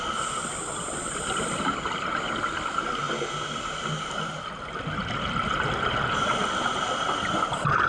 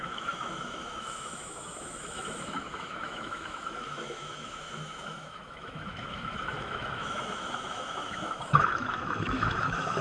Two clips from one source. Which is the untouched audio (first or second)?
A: first